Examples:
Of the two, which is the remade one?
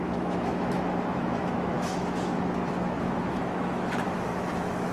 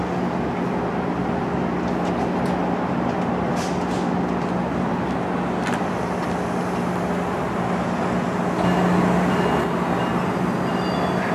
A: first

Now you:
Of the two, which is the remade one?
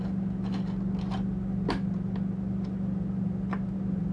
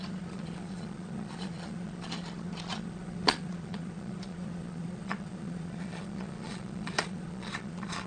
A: second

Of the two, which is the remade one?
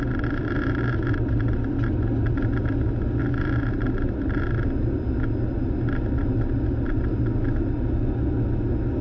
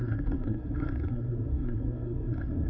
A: second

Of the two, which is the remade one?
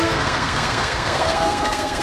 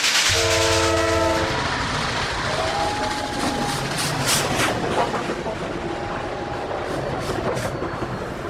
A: first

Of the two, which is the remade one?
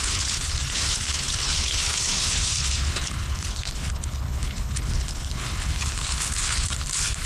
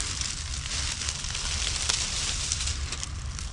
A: first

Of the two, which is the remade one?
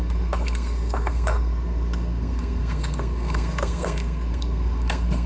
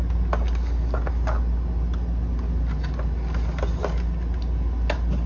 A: first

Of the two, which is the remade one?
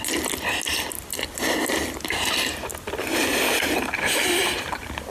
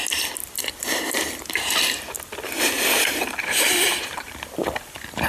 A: second